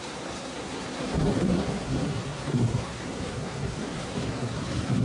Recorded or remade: remade